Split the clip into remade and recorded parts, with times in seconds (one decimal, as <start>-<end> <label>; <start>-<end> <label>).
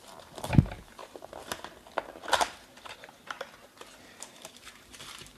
0.0-1.0 remade; 1.0-4.2 recorded; 4.2-5.4 remade